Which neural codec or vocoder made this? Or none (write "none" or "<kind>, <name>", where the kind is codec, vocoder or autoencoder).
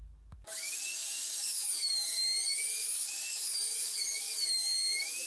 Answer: codec, DAC